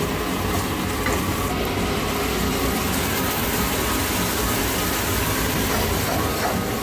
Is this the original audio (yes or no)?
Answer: yes